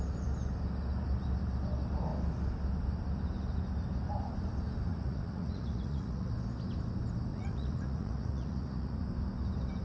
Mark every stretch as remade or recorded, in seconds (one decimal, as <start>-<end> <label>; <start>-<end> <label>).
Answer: 0.0-4.9 recorded; 4.9-6.3 remade; 6.3-7.3 recorded; 7.3-9.0 remade; 9.0-9.8 recorded